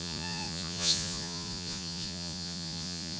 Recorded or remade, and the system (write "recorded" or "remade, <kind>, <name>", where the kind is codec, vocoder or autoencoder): remade, vocoder, Vocos